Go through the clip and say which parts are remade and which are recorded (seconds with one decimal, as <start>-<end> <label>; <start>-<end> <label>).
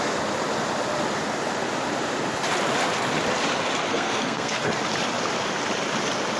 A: 0.0-3.9 recorded; 3.9-4.7 remade; 4.7-6.4 recorded